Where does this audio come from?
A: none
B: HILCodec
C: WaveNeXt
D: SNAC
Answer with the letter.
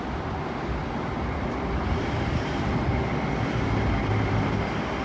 A